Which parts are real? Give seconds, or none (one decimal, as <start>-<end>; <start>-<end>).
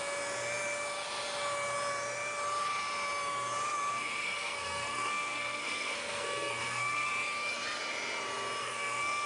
0.0-3.9; 7.1-8.6